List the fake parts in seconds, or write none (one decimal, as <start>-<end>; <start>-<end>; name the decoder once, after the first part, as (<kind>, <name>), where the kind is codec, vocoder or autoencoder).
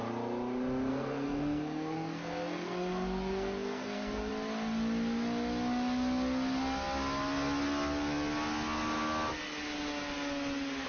0.9-4.3 (codec, SNAC)